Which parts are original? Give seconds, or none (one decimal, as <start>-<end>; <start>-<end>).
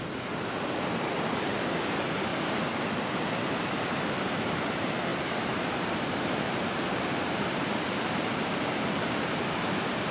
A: 2.3-3.1